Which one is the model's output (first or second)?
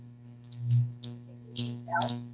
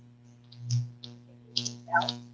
first